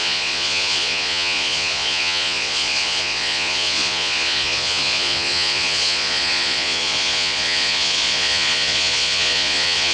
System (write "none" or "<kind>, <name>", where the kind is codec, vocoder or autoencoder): vocoder, Vocos